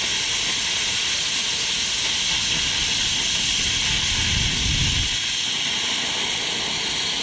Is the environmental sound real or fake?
real